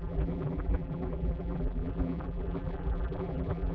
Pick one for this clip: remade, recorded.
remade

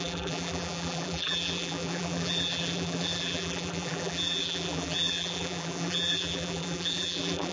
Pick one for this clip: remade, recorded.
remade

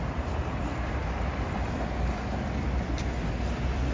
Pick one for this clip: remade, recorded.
recorded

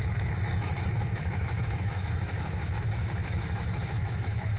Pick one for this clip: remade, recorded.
remade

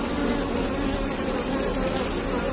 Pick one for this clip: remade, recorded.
recorded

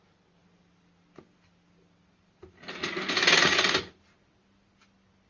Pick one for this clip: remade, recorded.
recorded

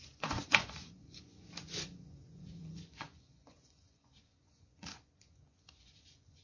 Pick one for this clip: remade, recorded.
remade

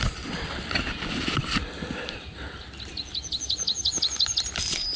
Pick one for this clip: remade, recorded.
recorded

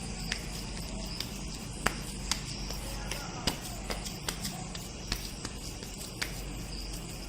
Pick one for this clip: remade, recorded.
recorded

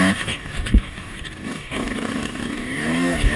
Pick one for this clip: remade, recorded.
remade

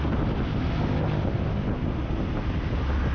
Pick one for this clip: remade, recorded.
recorded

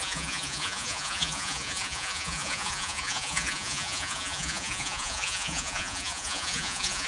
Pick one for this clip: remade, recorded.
remade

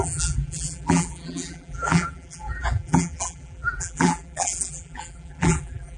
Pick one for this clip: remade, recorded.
remade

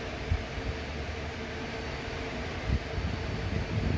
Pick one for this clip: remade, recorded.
recorded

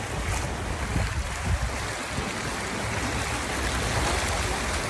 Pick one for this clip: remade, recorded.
recorded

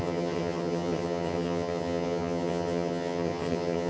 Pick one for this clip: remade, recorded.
remade